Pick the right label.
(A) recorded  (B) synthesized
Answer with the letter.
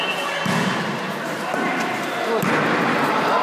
A